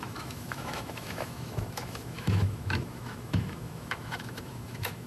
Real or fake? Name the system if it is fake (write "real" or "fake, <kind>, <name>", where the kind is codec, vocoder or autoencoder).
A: fake, autoencoder, DAC-VAE